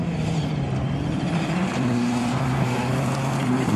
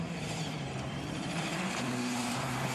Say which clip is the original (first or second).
first